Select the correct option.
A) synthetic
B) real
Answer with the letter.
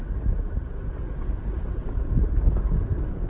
B